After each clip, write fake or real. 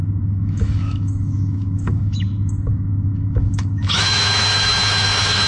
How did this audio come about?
fake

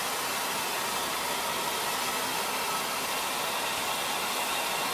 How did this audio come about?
real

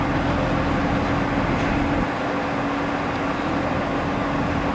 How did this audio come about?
real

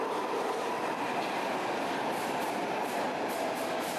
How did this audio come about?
real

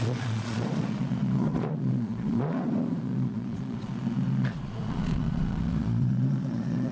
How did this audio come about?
fake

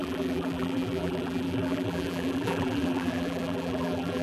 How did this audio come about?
fake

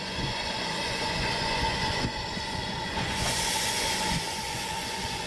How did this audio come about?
fake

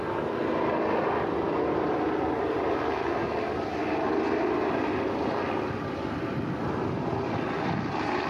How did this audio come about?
real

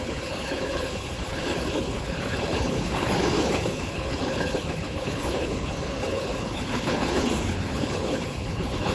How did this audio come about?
fake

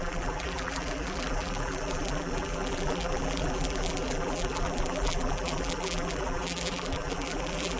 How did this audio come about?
fake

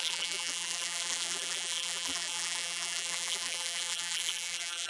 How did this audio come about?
fake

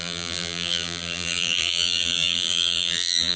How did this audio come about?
fake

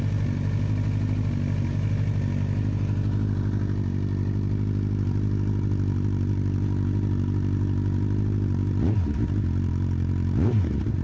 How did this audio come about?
real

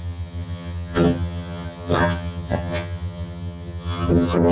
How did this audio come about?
fake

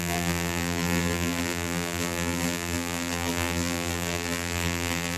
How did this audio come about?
fake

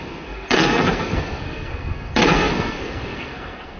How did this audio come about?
fake